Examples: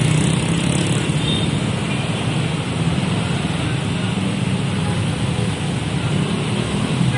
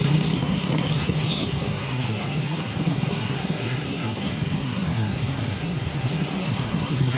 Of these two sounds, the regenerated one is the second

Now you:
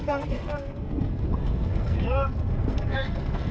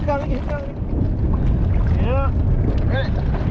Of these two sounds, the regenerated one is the first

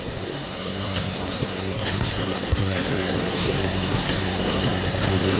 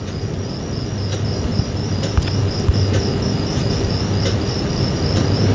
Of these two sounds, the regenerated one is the first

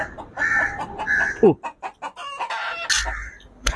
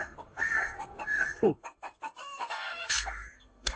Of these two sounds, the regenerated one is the second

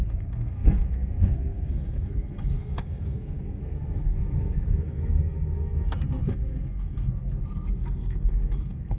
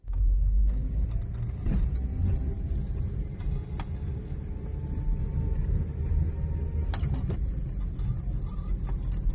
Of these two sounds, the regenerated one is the first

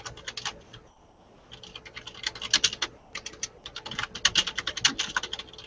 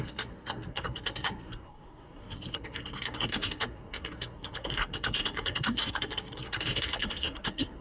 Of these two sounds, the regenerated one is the second